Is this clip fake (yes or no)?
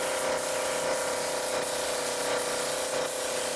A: no